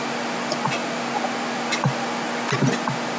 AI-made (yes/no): no